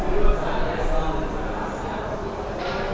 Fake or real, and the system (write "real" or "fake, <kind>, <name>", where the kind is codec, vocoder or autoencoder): real